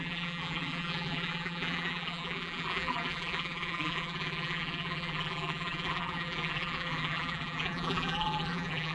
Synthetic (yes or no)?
yes